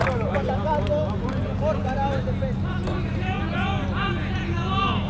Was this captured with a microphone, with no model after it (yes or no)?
yes